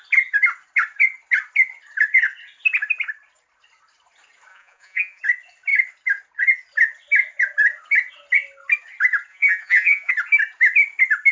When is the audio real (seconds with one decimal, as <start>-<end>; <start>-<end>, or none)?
0.0-4.5; 5.2-9.3; 10.1-11.3